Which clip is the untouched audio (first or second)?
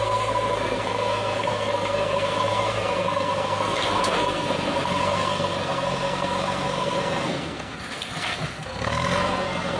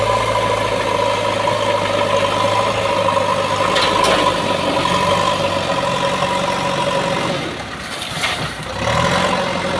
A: second